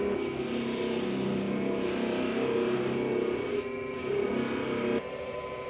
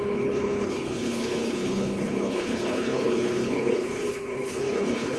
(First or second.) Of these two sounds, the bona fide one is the first